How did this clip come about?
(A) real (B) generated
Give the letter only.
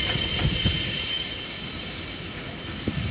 A